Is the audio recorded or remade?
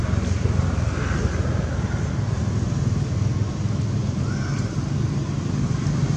recorded